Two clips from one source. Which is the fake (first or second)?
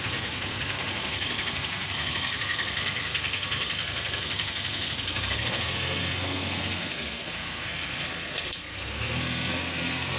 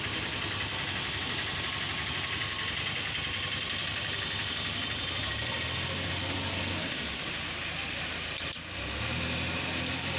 first